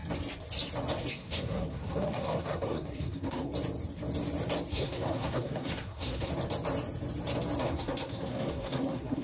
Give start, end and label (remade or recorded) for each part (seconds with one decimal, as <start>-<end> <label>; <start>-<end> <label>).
0.0-1.1 recorded; 1.1-3.5 remade; 3.5-4.7 recorded; 4.7-6.3 remade; 6.3-7.6 recorded; 7.6-9.2 remade